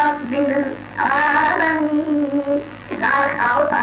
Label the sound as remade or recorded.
remade